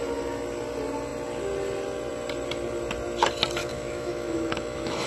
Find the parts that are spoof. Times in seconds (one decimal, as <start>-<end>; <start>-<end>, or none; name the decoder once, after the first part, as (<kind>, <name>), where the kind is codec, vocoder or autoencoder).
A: 3.6-5.1 (autoencoder, DAC-VAE)